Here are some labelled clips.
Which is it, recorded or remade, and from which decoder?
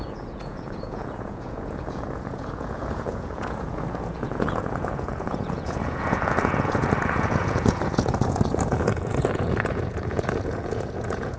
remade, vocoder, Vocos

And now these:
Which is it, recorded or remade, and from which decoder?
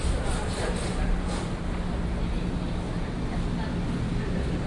recorded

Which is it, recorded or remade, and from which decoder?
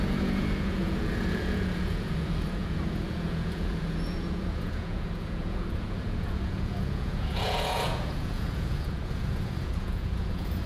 remade, vocoder, Vocos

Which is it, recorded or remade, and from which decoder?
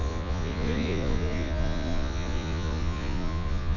remade, vocoder, Vocos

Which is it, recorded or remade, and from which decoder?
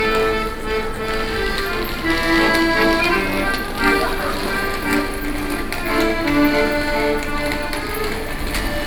recorded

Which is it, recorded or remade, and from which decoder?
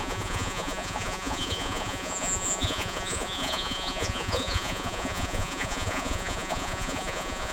remade, vocoder, Vocos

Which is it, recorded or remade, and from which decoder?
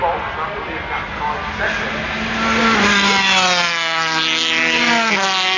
recorded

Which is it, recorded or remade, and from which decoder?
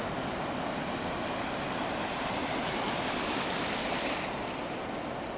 recorded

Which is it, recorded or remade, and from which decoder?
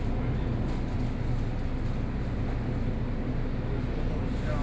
recorded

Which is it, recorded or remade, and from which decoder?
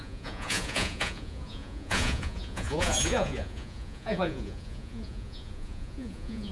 remade, vocoder, Vocos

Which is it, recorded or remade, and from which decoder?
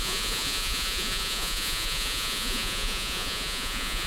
remade, vocoder, Vocos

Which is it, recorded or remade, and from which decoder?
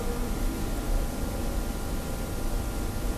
recorded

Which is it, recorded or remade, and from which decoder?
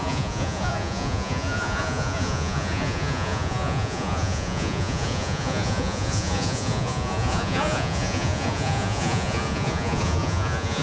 remade, vocoder, Vocos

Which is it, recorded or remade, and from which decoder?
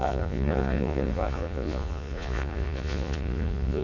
remade, vocoder, Vocos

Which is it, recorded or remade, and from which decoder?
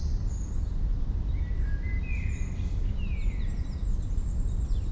recorded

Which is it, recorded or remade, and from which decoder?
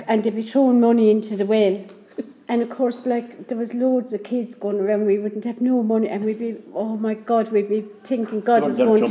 recorded